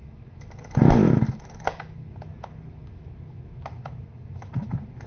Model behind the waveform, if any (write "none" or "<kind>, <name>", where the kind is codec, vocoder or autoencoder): autoencoder, DAC-VAE